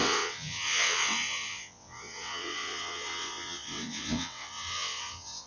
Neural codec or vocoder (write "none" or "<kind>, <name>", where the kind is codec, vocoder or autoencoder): vocoder, WaveNeXt